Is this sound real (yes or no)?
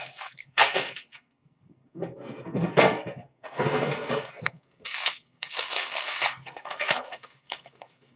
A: no